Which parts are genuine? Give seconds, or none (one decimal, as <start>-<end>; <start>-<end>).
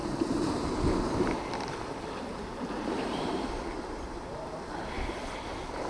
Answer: 0.7-2.5; 3.5-5.9